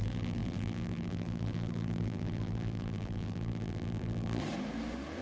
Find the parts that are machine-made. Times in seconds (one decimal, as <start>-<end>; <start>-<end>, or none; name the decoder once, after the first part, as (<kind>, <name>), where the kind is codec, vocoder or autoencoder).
0.0-4.4 (vocoder, BigVGAN v2)